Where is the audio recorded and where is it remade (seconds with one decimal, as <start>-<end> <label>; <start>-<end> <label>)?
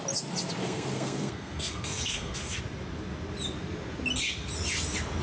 0.0-0.6 recorded; 0.6-2.6 remade; 2.6-5.2 recorded